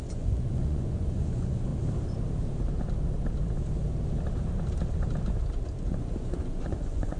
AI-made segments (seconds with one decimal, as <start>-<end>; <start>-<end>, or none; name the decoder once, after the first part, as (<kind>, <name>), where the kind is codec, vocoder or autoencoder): 0.0-1.7 (vocoder, Vocos); 5.8-7.2